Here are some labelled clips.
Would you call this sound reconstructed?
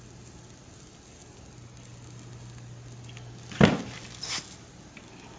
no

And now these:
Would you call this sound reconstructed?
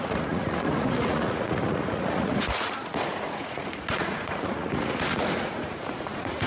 yes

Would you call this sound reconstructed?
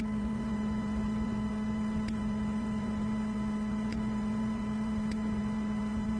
yes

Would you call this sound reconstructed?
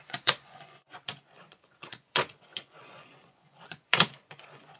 yes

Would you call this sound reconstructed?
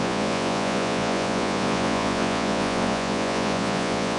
yes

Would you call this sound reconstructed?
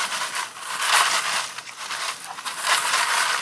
no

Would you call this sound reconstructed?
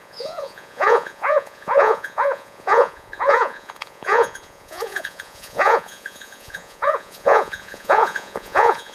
yes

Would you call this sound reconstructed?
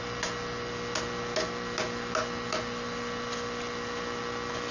no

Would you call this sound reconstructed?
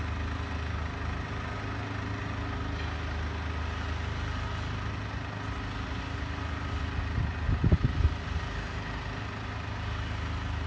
no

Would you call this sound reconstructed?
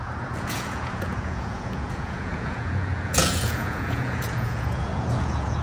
yes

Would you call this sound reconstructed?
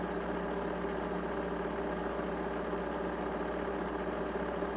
no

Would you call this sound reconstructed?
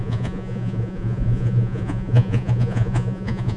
yes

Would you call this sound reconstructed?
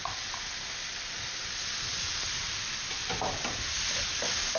no